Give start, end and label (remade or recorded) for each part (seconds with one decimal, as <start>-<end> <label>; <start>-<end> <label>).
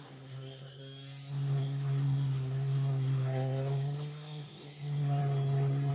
0.0-0.8 remade; 0.8-1.3 recorded; 1.3-5.2 remade; 5.2-5.9 recorded